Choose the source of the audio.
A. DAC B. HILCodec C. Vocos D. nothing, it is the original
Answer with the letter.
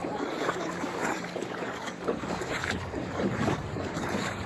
A